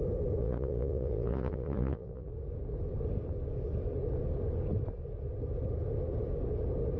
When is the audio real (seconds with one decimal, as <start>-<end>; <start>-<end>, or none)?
0.0-0.4; 2.3-7.0